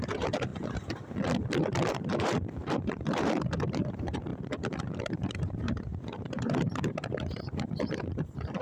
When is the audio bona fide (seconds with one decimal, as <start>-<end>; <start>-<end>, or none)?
0.5-1.9; 4.3-5.3